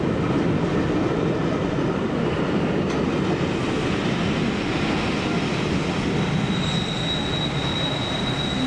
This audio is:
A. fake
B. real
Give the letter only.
B